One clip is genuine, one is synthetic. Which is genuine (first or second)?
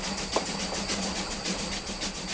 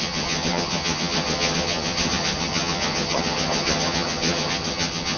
first